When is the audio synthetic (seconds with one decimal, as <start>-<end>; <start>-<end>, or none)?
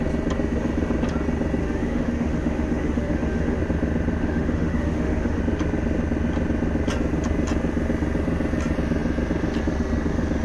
1.6-3.6; 4.2-5.4